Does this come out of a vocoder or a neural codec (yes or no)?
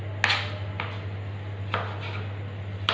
no